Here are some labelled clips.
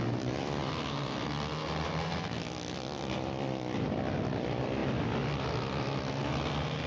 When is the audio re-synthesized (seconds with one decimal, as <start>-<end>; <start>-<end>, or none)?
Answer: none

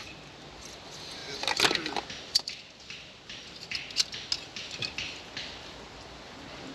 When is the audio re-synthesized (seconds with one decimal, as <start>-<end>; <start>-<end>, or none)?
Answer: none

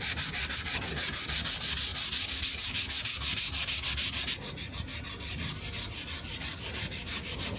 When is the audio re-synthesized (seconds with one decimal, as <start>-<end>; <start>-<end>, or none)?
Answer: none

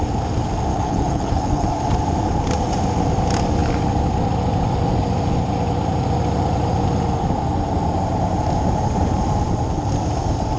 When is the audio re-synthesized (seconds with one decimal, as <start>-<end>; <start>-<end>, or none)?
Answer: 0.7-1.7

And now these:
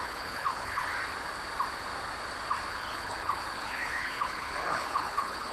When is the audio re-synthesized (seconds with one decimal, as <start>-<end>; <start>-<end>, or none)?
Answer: 0.0-0.9; 2.7-5.5

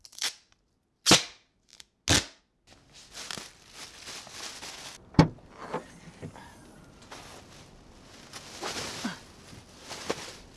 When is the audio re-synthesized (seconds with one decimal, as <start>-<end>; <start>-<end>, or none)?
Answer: none

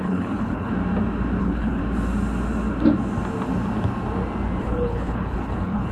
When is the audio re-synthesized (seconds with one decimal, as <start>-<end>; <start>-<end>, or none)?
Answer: 0.0-0.7; 1.4-1.8; 4.6-5.9